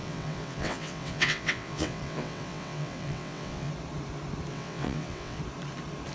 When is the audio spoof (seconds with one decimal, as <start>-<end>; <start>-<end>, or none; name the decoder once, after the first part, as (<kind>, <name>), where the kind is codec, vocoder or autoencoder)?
0.0-3.7 (vocoder, WaveNeXt); 4.5-5.4